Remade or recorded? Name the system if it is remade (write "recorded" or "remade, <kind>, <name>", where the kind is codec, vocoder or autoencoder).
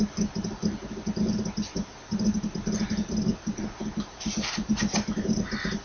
recorded